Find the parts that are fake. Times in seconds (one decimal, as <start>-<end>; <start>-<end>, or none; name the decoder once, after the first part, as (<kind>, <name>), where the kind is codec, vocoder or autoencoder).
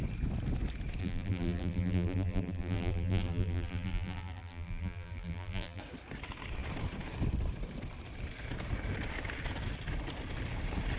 1.0-5.8 (vocoder, BigVGAN v2)